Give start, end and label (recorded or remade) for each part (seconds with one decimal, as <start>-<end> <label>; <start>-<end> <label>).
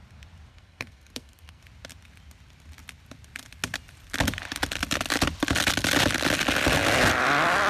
0.0-0.5 recorded; 0.5-1.6 remade; 1.6-7.7 recorded